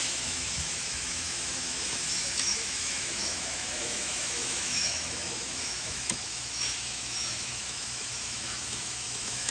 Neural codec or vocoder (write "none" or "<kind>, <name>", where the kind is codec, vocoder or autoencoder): autoencoder, DAC-VAE